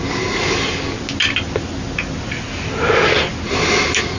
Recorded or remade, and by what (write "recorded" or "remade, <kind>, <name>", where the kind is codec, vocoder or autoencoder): recorded